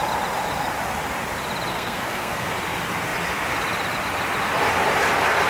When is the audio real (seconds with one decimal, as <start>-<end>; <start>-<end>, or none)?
0.0-1.7; 2.5-5.5